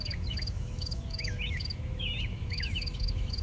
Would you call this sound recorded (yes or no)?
no